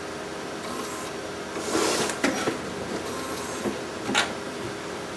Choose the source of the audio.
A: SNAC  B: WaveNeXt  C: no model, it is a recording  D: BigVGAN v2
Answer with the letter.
C